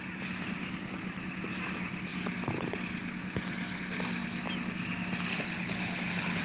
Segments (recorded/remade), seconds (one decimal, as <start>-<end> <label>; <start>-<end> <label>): 0.0-5.3 recorded; 5.3-6.4 remade